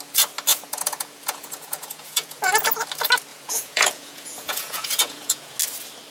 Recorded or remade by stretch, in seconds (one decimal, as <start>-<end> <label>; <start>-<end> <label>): 0.0-0.5 recorded; 0.5-2.4 remade; 2.4-3.3 recorded; 3.3-5.6 remade; 5.6-6.1 recorded